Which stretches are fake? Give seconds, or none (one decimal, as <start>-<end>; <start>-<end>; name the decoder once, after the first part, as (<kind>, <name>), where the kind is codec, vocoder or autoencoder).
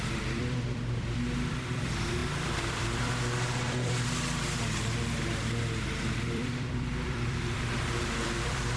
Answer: 0.0-8.8 (vocoder, BigVGAN v2)